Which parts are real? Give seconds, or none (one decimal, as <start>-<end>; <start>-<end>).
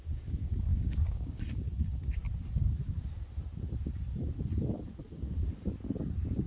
0.0-0.7; 1.4-6.5